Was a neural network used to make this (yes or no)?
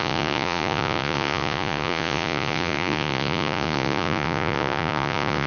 yes